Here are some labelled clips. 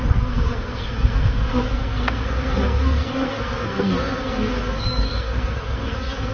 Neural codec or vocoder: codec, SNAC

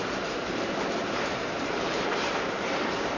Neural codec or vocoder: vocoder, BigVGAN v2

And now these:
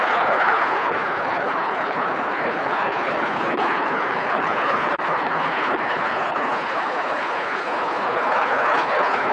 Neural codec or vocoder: codec, HILCodec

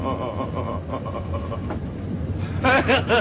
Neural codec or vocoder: none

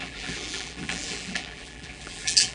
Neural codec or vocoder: vocoder, BigVGAN v2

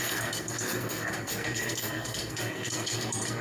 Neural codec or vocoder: codec, SNAC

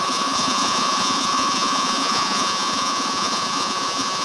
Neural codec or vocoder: vocoder, Vocos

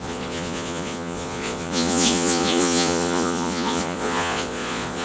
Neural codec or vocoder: vocoder, Vocos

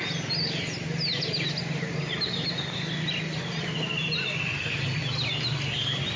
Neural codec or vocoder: none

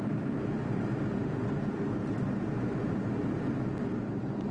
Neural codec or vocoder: vocoder, BigVGAN v2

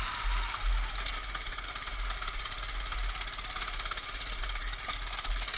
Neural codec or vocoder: none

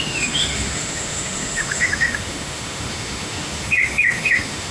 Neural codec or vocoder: autoencoder, DAC-VAE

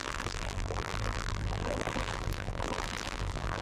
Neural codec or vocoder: vocoder, BigVGAN v2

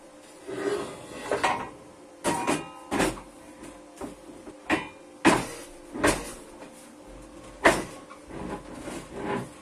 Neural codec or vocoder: none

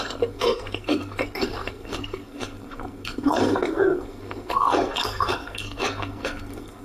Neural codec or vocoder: codec, SNAC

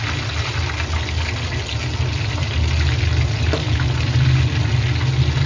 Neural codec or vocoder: none